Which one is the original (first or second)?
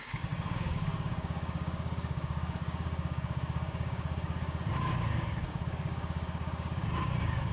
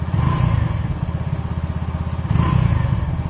second